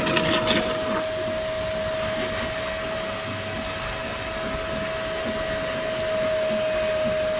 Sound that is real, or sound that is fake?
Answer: real